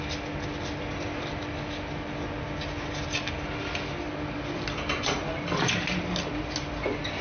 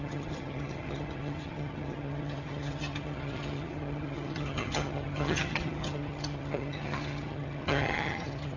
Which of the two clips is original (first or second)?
first